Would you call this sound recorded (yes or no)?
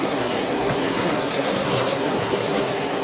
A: no